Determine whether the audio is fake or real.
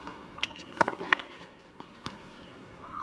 fake